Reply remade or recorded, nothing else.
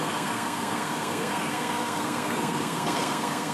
remade